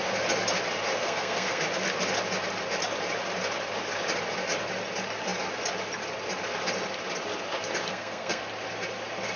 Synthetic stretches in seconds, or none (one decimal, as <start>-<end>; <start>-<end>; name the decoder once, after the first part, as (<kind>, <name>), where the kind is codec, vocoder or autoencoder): 1.0-1.6 (codec, SNAC); 7.9-8.4